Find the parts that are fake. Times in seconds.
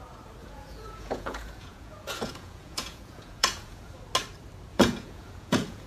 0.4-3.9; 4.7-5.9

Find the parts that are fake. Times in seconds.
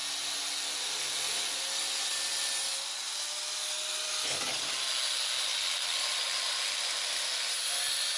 none